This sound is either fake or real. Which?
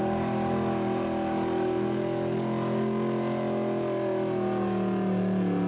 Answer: real